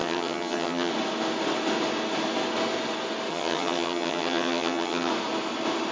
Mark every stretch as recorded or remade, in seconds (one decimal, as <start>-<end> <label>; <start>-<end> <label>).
0.0-0.9 remade; 0.9-3.3 recorded; 3.3-5.1 remade; 5.1-5.9 recorded

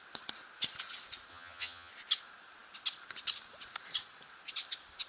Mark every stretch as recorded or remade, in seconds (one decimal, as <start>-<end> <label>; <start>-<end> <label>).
0.0-1.3 recorded; 1.3-1.9 remade; 1.9-5.1 recorded

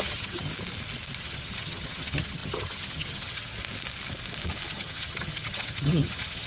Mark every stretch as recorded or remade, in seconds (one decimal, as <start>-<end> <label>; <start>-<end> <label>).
0.0-0.5 remade; 0.5-1.2 recorded; 1.2-3.5 remade; 3.5-4.7 recorded; 4.7-6.5 remade

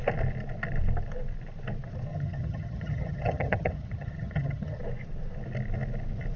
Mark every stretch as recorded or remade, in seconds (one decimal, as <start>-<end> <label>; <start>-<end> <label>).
0.0-2.1 recorded; 2.1-4.8 remade; 4.8-6.4 recorded

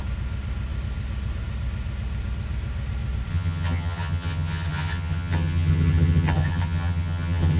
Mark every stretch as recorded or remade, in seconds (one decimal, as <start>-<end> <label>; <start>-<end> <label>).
0.0-3.3 recorded; 3.3-7.6 remade